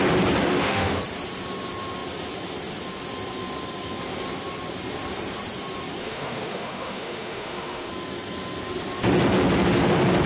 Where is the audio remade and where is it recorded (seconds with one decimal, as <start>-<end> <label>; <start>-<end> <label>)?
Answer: 0.0-0.4 recorded; 0.4-1.0 remade; 1.0-6.0 recorded; 6.0-7.9 remade; 7.9-10.3 recorded